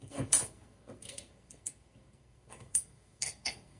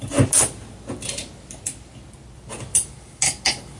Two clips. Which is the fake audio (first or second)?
first